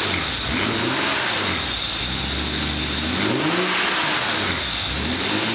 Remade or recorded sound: recorded